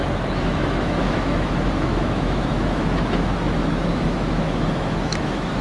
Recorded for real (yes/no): no